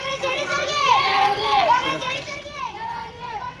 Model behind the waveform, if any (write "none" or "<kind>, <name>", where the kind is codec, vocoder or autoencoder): vocoder, WaveNeXt